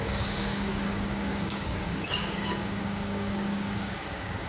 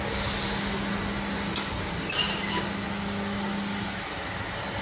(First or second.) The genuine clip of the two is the second